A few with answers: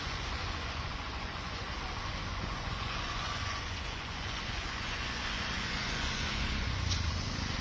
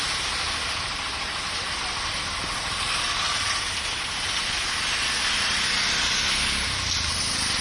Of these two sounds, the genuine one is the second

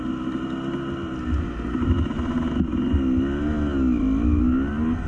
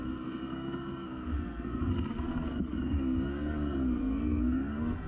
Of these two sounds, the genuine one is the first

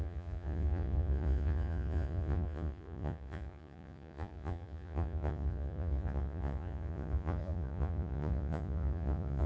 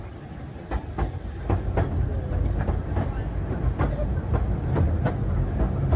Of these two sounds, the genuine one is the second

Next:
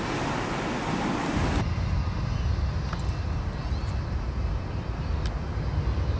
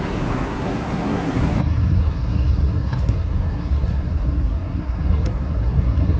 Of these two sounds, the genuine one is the first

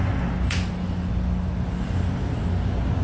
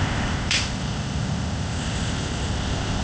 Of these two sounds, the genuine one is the first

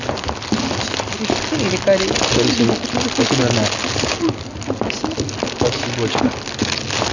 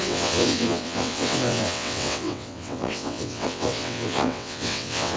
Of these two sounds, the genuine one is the first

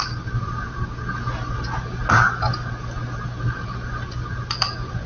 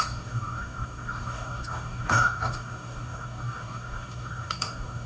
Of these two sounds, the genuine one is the first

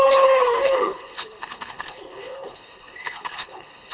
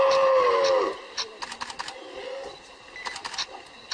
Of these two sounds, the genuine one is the second